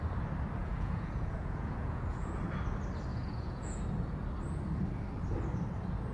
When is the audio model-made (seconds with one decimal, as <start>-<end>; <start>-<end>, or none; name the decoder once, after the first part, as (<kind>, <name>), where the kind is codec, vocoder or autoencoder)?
0.6-2.4 (vocoder, Vocos); 3.1-3.8

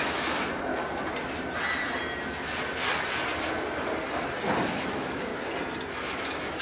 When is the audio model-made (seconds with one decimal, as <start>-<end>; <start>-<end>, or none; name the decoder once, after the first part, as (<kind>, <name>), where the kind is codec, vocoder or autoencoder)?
0.0-0.7 (autoencoder, DAC-VAE); 4.7-5.3; 5.9-6.6